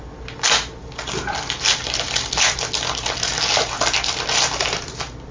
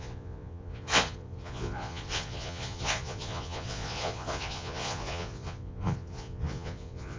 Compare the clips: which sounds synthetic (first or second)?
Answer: second